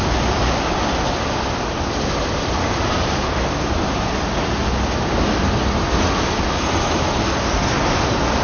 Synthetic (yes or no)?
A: no